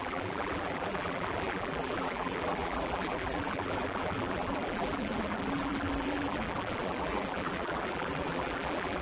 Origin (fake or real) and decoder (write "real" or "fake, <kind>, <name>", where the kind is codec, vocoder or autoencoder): fake, vocoder, BigVGAN v2